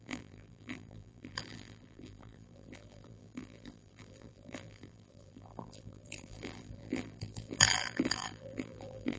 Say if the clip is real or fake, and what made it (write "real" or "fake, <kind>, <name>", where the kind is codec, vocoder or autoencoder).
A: fake, vocoder, BigVGAN v2